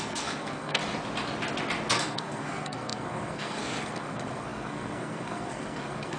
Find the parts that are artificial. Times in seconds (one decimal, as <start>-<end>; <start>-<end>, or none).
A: 0.0-0.8; 1.9-6.2